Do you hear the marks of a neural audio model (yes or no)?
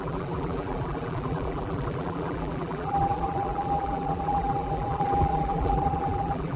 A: yes